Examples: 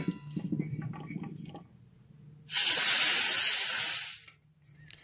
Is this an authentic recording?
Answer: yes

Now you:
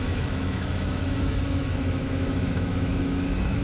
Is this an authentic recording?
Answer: no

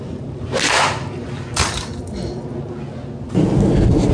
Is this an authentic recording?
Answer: yes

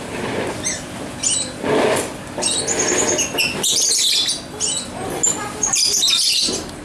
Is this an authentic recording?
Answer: yes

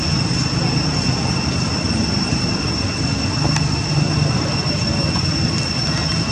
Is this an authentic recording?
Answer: yes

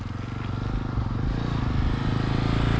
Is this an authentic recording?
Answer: yes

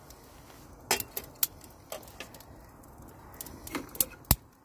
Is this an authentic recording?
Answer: yes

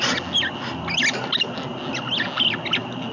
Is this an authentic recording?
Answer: yes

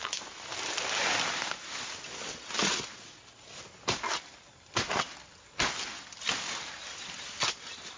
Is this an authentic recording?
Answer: yes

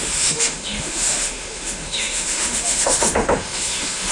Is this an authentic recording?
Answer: no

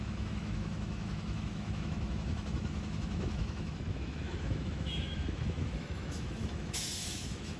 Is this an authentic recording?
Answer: no